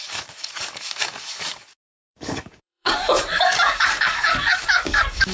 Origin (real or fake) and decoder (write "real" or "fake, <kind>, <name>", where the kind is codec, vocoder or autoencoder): fake, codec, DAC